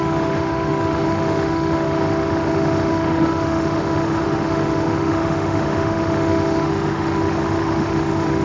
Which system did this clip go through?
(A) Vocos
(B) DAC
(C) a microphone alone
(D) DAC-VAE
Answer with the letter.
D